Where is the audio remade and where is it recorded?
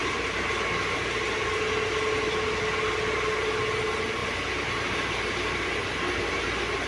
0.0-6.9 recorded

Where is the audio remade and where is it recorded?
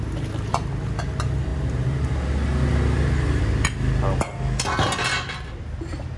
0.0-5.1 recorded; 5.1-6.2 remade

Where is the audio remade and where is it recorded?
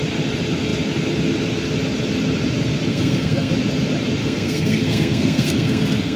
0.0-2.9 recorded; 2.9-3.5 remade; 3.5-4.2 recorded; 4.2-6.2 remade